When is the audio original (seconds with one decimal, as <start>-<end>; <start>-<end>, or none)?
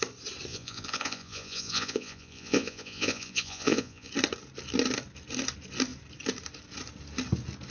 0.0-0.5; 4.1-7.7